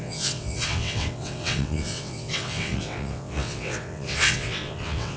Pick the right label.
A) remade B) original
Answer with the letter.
A